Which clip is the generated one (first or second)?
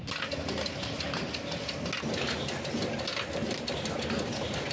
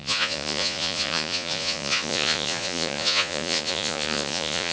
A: second